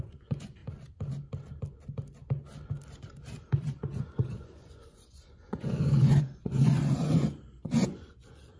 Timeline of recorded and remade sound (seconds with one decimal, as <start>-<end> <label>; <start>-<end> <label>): 0.0-0.6 remade; 0.6-3.6 recorded; 3.6-8.6 remade